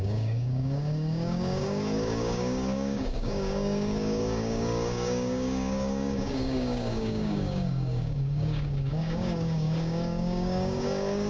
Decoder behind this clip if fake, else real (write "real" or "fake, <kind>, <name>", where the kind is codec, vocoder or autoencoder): fake, codec, DAC